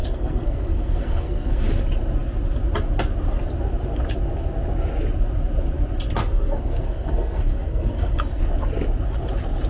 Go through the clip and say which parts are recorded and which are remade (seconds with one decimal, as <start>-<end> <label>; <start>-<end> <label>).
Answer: 0.0-1.6 remade; 1.6-6.2 recorded; 6.2-8.4 remade; 8.4-9.7 recorded